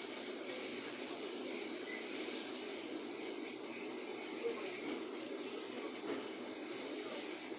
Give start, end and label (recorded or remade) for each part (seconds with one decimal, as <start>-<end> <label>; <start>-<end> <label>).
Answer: 0.0-0.7 recorded; 0.7-1.3 remade; 1.3-2.7 recorded; 2.7-3.5 remade; 3.5-7.6 recorded